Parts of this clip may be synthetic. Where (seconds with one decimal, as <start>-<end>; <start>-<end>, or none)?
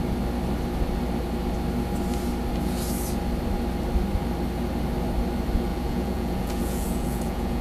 5.7-7.6